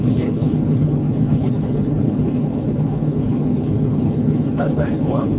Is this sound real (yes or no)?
no